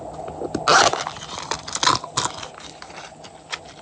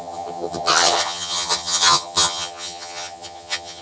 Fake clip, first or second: second